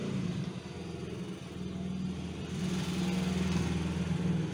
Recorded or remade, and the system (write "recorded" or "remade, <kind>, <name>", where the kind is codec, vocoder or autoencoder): recorded